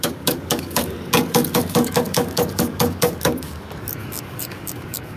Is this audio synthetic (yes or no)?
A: yes